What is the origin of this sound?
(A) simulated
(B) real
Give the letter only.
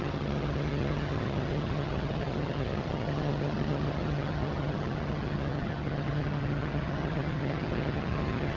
A